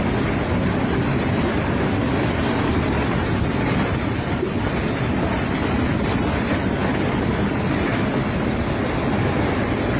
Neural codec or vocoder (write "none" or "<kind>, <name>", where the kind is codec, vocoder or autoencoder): none